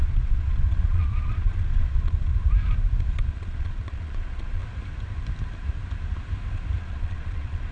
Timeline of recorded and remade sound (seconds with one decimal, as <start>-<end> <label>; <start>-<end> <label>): 0.0-2.3 remade; 2.3-3.1 recorded; 3.1-4.6 remade; 4.6-6.8 recorded; 6.8-7.7 remade